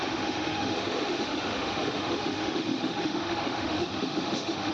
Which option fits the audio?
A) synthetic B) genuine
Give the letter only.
A